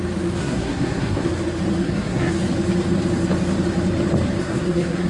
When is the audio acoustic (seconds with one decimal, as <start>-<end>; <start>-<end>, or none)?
0.0-0.4; 1.3-1.8; 2.3-4.4